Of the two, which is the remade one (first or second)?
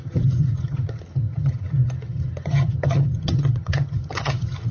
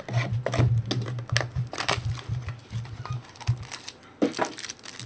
first